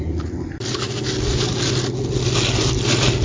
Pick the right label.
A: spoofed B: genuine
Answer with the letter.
B